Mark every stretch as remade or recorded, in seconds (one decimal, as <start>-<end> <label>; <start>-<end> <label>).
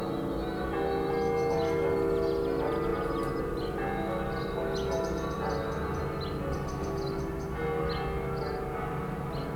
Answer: 0.0-9.6 recorded